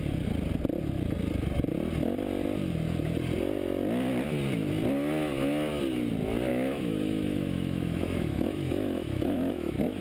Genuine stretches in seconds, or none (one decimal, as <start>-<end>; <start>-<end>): 0.0-6.5